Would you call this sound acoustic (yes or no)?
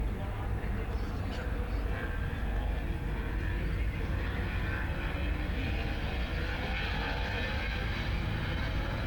yes